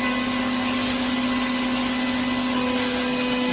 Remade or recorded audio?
recorded